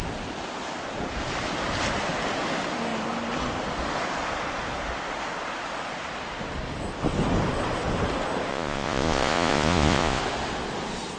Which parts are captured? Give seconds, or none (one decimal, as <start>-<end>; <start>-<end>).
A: 0.0-8.5; 10.2-11.2